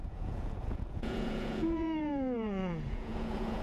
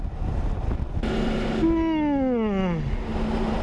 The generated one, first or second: first